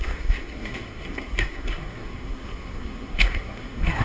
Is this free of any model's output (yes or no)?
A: no